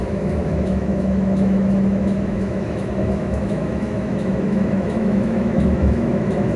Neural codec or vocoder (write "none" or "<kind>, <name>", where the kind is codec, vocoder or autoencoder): autoencoder, DAC-VAE